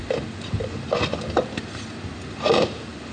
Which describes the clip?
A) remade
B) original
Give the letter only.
B